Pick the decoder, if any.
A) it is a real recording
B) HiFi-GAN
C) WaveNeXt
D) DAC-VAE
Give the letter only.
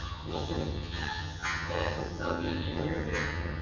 B